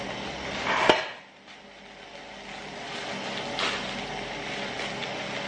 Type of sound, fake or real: real